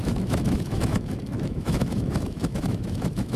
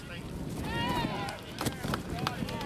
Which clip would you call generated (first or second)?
first